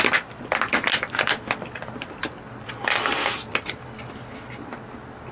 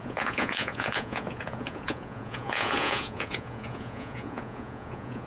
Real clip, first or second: first